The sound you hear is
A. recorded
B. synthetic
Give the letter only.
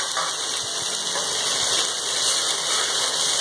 A